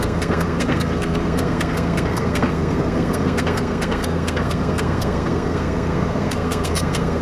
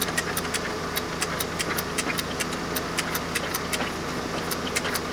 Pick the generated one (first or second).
first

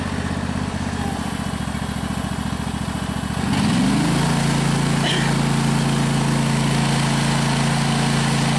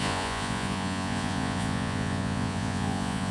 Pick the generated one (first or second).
second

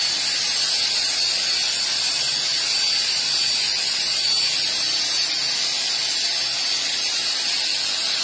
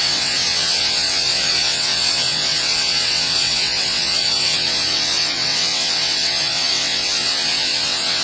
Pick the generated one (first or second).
second